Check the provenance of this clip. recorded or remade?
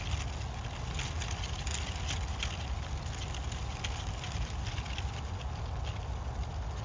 recorded